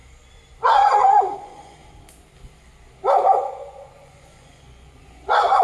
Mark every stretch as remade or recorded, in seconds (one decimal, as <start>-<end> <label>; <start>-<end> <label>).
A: 0.0-1.0 recorded; 1.0-1.8 remade; 1.8-3.2 recorded; 3.2-5.6 remade